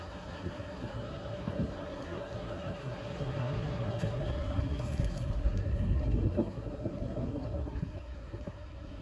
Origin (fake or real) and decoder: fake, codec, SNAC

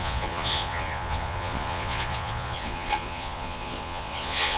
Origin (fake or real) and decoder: fake, vocoder, Vocos